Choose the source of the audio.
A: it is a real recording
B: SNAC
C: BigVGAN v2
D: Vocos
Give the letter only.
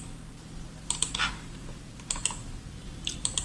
A